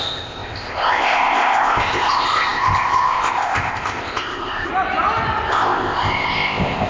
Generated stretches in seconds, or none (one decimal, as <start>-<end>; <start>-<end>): 0.0-4.7; 5.5-6.9